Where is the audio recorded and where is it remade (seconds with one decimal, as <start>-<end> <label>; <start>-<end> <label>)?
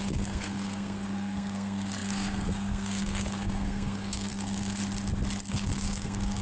0.0-4.8 remade; 4.8-5.5 recorded; 5.5-6.4 remade